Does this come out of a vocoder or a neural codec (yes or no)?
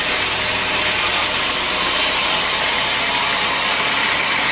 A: no